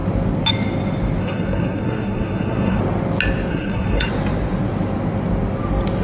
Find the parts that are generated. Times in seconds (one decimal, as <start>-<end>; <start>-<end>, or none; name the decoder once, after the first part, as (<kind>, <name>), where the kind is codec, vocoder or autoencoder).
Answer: 1.2-2.8 (codec, SNAC); 3.5-4.1